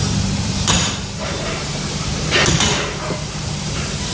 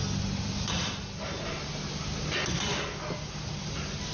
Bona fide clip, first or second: second